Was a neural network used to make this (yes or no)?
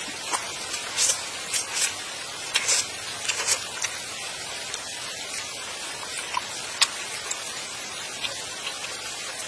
no